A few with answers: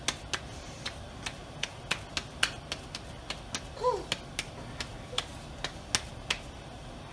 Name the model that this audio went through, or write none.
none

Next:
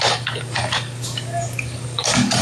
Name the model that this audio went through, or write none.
codec, DAC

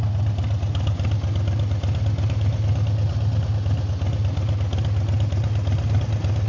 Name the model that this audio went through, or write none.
none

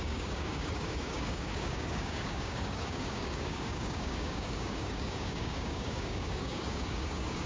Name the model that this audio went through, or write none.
codec, DAC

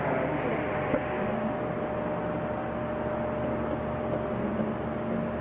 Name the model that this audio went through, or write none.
none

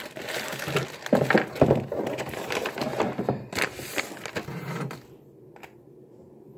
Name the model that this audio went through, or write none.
none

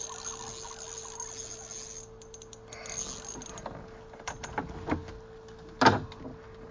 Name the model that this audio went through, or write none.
none